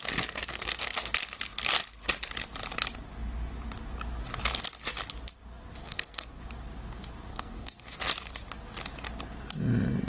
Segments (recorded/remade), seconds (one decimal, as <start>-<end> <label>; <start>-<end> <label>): 0.0-0.5 recorded; 0.5-1.1 remade; 1.1-5.8 recorded; 5.8-6.4 remade; 6.4-7.3 recorded; 7.3-8.0 remade; 8.0-10.1 recorded